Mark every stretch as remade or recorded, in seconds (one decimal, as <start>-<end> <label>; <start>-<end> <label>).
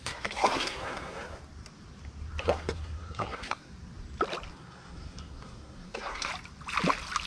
0.0-1.4 remade; 1.4-2.4 recorded; 2.4-3.7 remade; 3.7-4.5 recorded; 4.5-6.3 remade; 6.3-7.3 recorded